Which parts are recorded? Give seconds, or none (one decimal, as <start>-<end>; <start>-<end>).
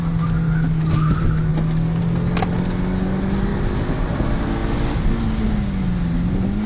0.0-6.7